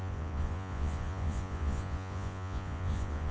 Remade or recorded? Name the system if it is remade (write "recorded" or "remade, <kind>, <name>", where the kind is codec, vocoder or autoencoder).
remade, vocoder, Vocos